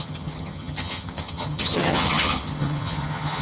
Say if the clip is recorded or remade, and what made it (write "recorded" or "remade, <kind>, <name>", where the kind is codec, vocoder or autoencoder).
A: remade, vocoder, HiFi-GAN